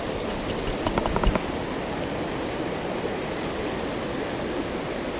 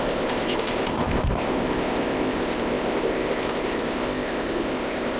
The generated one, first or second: second